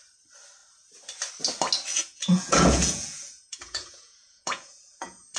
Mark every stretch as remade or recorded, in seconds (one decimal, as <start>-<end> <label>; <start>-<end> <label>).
0.0-1.9 recorded; 1.9-5.4 remade